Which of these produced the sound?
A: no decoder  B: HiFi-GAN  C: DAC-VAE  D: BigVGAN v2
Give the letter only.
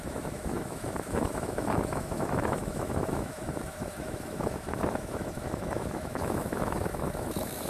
C